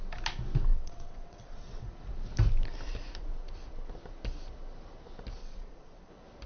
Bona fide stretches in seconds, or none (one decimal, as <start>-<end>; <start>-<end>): 0.0-0.7; 1.9-5.4; 6.1-6.5